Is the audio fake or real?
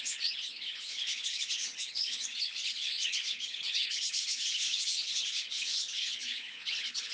fake